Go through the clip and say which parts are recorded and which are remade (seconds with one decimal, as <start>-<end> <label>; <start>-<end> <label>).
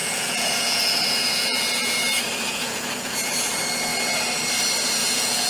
0.0-3.3 remade; 3.3-5.0 recorded; 5.0-5.5 remade